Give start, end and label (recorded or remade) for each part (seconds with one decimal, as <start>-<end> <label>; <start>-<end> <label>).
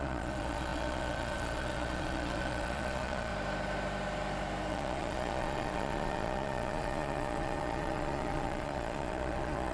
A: 0.0-3.3 remade; 3.3-4.7 recorded; 4.7-9.7 remade